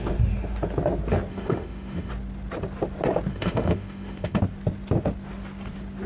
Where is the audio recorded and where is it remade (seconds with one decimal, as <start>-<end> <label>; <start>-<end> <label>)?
0.0-1.3 recorded; 1.3-2.1 remade; 2.1-3.3 recorded; 3.3-4.4 remade; 4.4-6.1 recorded